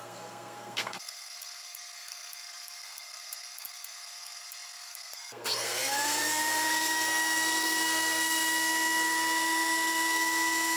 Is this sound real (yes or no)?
no